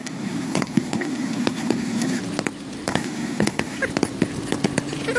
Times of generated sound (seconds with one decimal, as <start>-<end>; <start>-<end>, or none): 0.0-2.2; 2.9-3.8